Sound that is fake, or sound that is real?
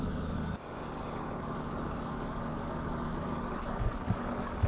fake